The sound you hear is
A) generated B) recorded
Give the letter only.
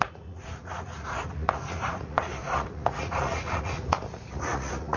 A